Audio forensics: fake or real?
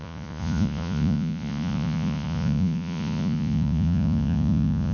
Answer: fake